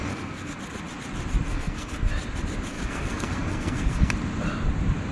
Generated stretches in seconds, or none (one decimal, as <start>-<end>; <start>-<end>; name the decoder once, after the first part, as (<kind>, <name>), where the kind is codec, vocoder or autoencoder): 0.0-0.6 (codec, SNAC); 1.5-2.1; 2.7-4.1